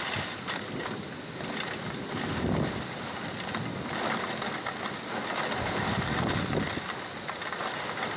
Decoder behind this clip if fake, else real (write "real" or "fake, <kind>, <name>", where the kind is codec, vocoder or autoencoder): real